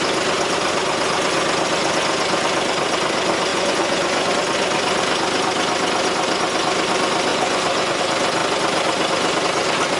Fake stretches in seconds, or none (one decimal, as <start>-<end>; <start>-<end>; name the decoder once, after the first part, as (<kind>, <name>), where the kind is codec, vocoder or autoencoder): 3.5-4.3 (vocoder, Vocos); 7.3-8.0